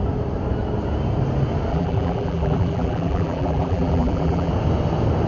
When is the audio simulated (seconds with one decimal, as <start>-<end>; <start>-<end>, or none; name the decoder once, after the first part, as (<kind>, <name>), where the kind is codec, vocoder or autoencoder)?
1.7-4.5 (vocoder, BigVGAN v2)